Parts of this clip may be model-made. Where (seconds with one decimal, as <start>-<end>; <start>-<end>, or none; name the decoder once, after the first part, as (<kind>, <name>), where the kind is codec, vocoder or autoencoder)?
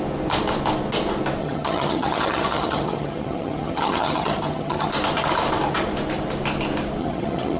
1.4-4.9 (vocoder, HiFi-GAN); 7.0-7.6